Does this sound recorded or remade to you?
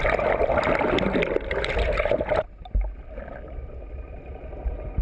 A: recorded